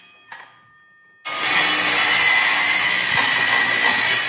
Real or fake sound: real